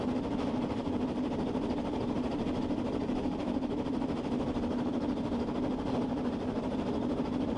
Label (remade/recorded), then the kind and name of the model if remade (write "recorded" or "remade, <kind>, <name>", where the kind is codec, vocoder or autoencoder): recorded